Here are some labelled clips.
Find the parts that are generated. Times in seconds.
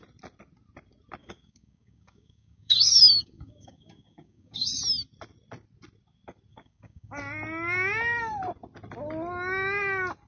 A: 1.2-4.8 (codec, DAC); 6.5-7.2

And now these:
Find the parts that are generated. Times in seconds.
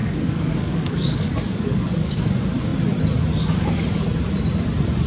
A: 0.0-2.3 (codec, DAC)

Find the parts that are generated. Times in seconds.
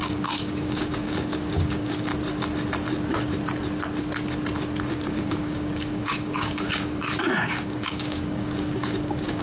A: 0.0-2.1 (codec, DAC); 4.8-9.4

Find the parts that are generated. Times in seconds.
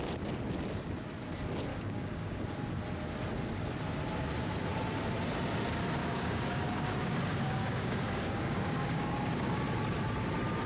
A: 1.7-2.4 (codec, DAC); 6.0-9.6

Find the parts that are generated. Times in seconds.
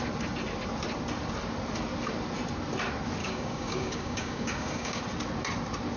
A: 3.2-5.0 (codec, DAC)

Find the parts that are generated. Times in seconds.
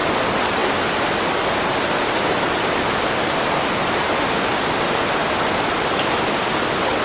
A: none